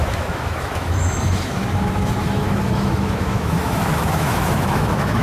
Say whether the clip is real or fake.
fake